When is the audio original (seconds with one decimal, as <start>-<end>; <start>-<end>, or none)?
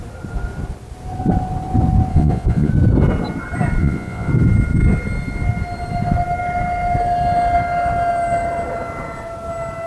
0.0-2.1; 2.7-3.8; 4.3-9.9